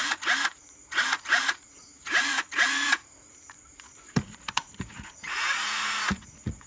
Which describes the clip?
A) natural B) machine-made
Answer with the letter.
B